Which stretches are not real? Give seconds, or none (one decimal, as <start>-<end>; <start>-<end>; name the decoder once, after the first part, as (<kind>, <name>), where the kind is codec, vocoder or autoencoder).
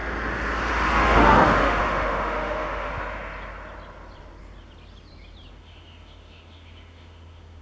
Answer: 0.7-2.9 (autoencoder, DAC-VAE); 5.5-7.6